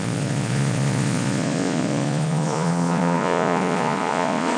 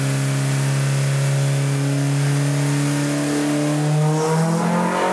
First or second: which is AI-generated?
first